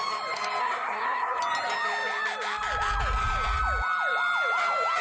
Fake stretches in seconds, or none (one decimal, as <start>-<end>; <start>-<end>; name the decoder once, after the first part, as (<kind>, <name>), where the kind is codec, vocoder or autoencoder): 0.6-1.4 (codec, SNAC)